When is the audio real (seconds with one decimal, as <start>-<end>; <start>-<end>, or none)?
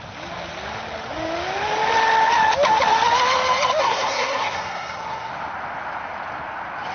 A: 0.0-3.8; 5.3-6.9